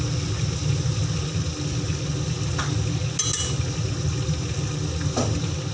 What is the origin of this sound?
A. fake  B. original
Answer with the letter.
B